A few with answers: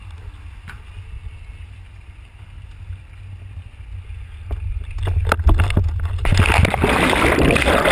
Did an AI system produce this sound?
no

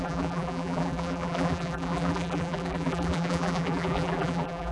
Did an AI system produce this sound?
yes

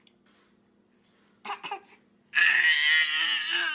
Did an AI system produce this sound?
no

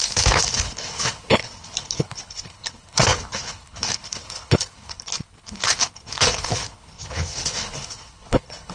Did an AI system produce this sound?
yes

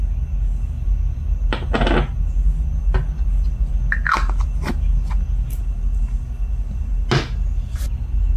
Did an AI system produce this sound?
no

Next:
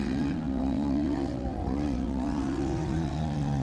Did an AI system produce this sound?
yes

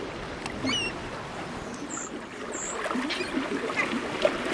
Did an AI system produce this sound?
no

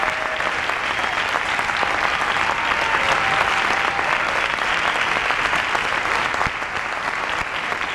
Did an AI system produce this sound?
no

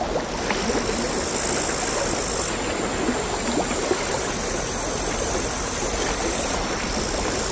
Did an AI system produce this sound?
no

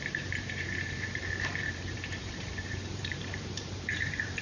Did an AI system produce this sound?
yes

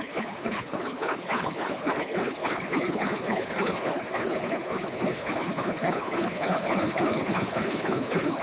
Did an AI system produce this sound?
yes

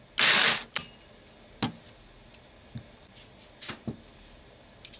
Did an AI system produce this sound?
no